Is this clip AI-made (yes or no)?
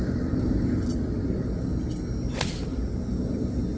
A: no